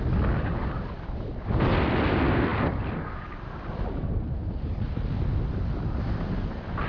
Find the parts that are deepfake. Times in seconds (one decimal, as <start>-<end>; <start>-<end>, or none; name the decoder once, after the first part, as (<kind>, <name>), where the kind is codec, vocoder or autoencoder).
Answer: none